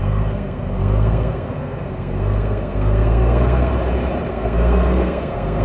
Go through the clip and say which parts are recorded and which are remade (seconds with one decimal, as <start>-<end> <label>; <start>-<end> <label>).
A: 0.0-3.7 remade; 3.7-4.3 recorded; 4.3-5.6 remade